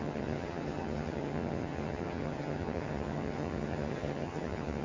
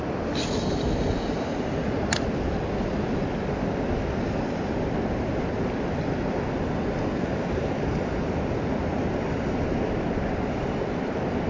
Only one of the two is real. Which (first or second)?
second